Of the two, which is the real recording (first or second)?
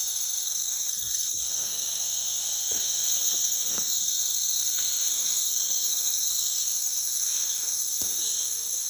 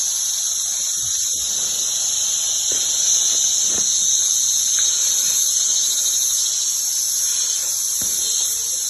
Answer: second